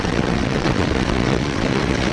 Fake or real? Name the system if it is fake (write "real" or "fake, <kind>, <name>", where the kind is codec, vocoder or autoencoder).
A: fake, vocoder, WaveNeXt